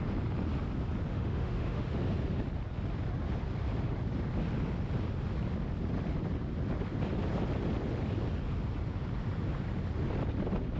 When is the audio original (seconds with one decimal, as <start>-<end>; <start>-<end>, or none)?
0.0-1.1; 2.0-10.8